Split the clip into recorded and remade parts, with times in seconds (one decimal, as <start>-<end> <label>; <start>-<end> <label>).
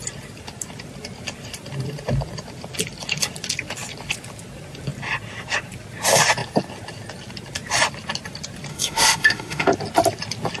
0.0-8.7 recorded; 8.7-9.7 remade; 9.7-10.6 recorded